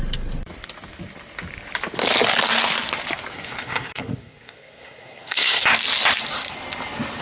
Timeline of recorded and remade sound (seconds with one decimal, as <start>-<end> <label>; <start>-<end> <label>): 0.0-3.3 recorded; 3.3-5.6 remade; 5.6-7.2 recorded